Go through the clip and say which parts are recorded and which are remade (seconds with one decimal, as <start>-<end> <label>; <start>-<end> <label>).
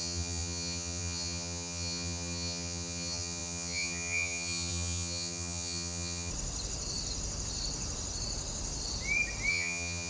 0.0-6.3 remade; 6.3-9.5 recorded; 9.5-10.1 remade